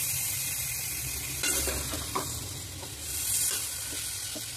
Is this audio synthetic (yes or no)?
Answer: no